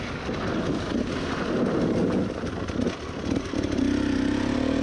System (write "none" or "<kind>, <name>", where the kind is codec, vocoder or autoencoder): none